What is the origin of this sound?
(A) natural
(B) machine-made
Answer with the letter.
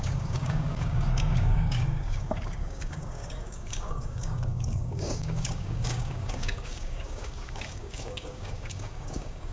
B